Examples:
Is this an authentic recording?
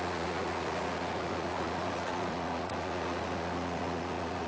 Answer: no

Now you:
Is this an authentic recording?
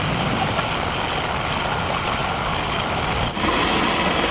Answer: yes